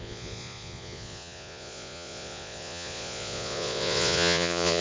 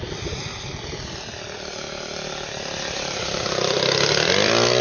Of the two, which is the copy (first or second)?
first